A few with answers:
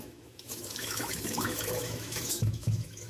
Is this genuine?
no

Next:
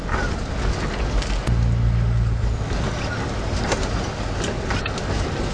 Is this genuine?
yes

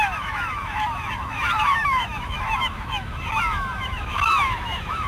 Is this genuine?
no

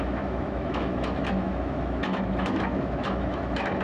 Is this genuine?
no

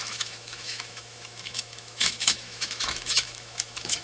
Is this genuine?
no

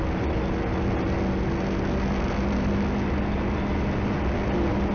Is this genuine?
yes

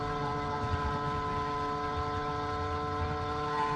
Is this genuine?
yes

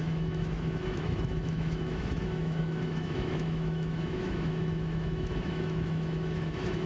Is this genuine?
no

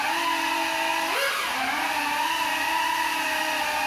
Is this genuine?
yes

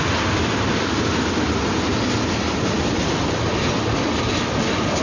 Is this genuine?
yes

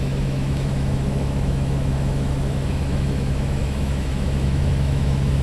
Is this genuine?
no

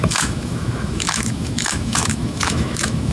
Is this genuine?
no